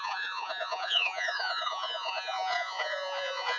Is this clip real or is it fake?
fake